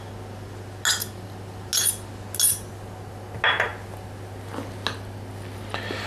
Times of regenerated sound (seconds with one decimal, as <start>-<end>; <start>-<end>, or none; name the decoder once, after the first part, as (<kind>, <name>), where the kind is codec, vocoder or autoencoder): none